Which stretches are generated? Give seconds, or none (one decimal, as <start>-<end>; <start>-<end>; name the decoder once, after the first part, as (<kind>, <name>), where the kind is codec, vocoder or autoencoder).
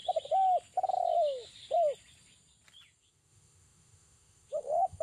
3.0-5.0 (autoencoder, DAC-VAE)